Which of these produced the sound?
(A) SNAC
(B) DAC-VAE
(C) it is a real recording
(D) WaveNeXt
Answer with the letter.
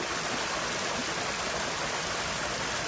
C